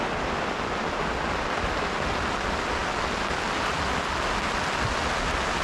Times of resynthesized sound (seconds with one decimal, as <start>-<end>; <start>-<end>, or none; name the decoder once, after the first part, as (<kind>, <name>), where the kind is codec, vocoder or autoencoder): none